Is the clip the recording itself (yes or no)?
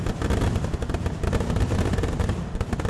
yes